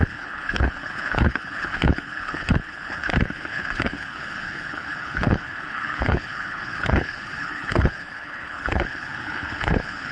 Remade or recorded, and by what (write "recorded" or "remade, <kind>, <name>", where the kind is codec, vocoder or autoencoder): remade, codec, HILCodec